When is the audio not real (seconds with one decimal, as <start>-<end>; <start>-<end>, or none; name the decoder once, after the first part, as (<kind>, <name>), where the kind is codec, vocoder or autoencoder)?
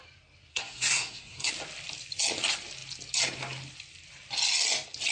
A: 0.5-1.5 (codec, SNAC)